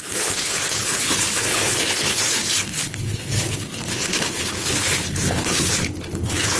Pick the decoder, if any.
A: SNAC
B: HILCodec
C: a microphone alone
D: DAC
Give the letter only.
B